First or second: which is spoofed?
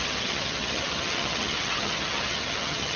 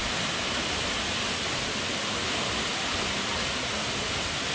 first